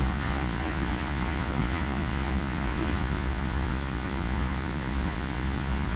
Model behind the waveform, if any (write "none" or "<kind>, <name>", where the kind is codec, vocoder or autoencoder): vocoder, Vocos